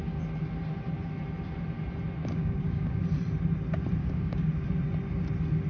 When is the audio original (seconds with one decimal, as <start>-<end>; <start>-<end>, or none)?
0.0-2.2; 3.0-4.0; 4.5-5.7